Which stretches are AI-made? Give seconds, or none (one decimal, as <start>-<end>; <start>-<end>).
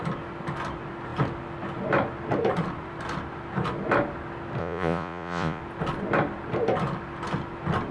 4.6-5.6